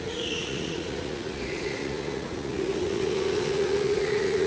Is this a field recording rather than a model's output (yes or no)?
no